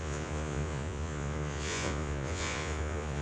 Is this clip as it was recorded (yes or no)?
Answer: no